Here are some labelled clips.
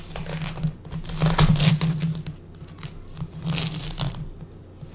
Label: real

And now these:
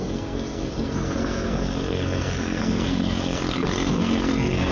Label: fake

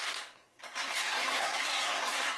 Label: fake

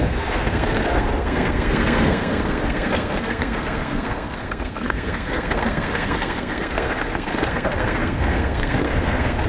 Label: fake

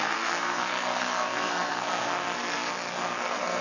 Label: fake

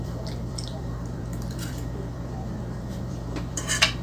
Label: fake